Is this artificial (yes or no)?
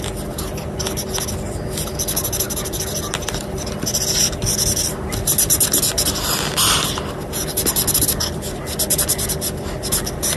no